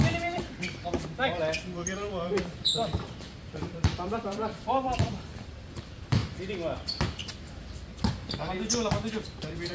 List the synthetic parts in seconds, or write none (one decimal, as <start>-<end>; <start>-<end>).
0.0-6.2